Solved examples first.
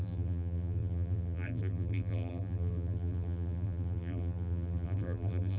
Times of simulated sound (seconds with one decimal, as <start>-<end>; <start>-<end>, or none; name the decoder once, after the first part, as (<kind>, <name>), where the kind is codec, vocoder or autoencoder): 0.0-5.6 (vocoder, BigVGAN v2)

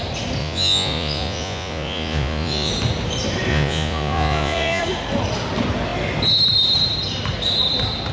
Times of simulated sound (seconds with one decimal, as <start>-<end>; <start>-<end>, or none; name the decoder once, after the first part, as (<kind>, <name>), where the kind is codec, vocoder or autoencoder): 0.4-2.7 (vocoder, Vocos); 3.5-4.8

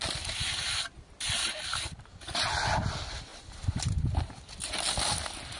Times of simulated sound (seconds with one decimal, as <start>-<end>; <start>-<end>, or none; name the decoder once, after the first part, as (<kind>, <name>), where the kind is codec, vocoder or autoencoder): 3.3-4.3 (vocoder, BigVGAN v2)